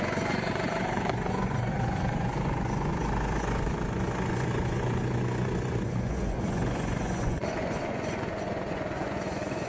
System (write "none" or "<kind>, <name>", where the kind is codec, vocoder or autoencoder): vocoder, Vocos